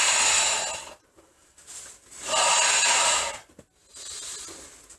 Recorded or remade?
recorded